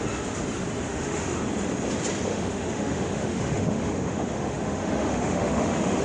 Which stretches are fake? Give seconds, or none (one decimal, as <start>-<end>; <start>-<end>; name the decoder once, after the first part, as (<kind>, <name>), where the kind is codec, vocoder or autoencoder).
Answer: 0.9-1.4 (autoencoder, DAC-VAE); 2.3-6.0